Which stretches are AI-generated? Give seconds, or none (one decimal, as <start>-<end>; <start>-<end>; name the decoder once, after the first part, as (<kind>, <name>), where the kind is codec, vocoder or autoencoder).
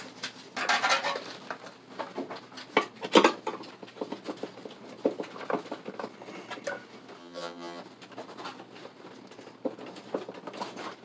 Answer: 7.2-7.8 (vocoder, HiFi-GAN)